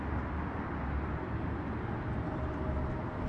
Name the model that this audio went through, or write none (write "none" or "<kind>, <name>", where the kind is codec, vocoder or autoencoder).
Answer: none